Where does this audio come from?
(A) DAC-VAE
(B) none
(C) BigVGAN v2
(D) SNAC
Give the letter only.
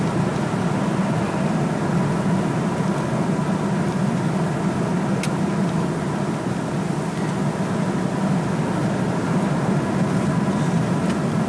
B